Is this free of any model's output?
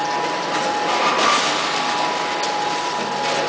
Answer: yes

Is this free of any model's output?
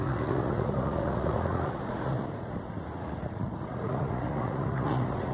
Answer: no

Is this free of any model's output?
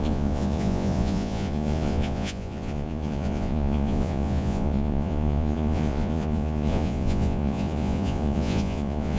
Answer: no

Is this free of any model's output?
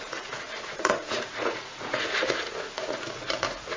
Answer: no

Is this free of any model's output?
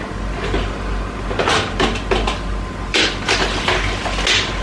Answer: yes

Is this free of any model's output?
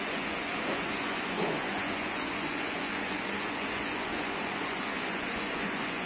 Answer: no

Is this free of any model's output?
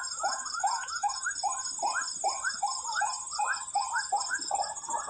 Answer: no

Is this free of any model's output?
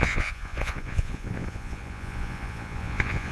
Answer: no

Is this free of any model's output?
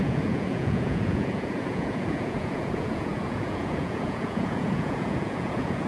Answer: no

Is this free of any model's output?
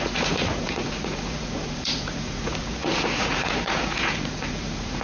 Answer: no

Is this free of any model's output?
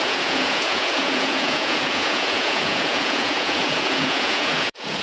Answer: no